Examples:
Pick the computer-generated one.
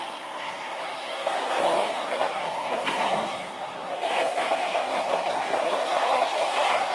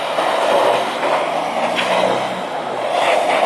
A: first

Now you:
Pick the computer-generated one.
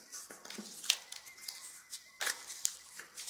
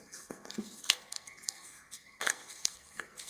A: second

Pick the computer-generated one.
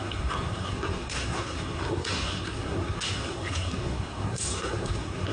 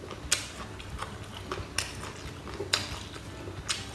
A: first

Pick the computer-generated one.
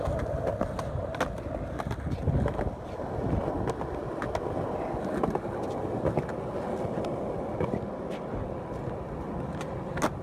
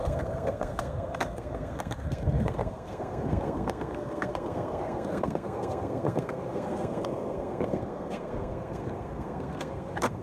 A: second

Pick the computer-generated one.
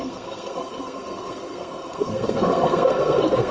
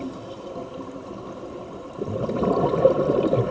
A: first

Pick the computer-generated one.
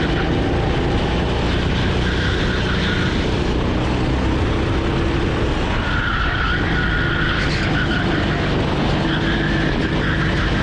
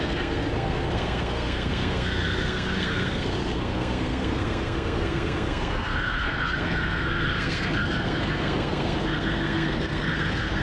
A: second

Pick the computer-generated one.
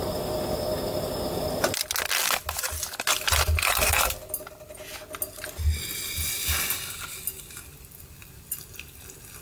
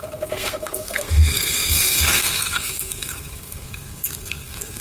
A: second